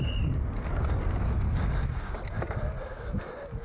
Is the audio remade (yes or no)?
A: no